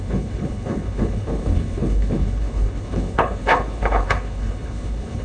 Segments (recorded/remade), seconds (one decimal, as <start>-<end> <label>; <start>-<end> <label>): 0.0-5.2 remade